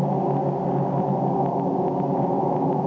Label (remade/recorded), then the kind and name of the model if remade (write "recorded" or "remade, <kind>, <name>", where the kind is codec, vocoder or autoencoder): recorded